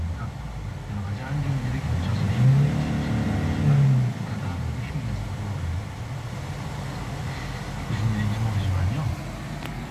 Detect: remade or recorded recorded